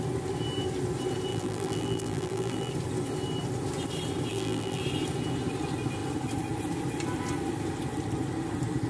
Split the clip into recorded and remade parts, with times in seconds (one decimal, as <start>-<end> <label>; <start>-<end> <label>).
0.0-1.3 recorded; 1.3-2.7 remade; 2.7-4.3 recorded; 4.3-4.8 remade; 4.8-8.9 recorded